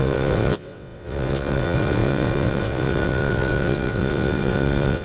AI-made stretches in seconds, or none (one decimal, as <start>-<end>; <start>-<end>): 0.0-5.0